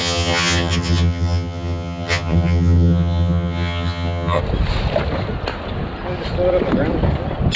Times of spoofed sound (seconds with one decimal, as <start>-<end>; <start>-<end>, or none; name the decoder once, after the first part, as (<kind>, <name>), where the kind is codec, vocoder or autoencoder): 0.0-4.4 (vocoder, HiFi-GAN)